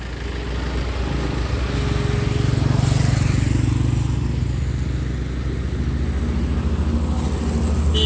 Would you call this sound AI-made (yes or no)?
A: no